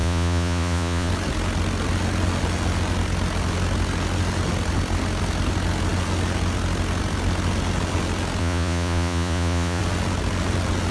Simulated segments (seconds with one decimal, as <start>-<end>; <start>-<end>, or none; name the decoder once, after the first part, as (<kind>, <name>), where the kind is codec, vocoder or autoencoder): 0.0-1.1 (vocoder, Vocos); 8.4-9.8